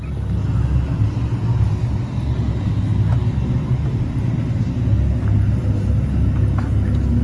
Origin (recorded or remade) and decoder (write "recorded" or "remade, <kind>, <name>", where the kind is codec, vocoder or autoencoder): recorded